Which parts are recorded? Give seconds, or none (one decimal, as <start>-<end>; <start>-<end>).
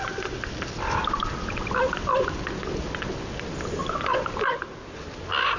0.0-3.8